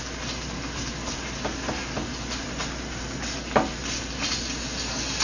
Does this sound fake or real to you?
real